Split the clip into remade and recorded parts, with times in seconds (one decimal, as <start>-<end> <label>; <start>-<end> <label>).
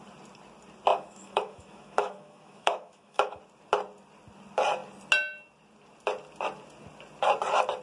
0.0-0.9 recorded; 0.9-3.4 remade; 3.4-7.8 recorded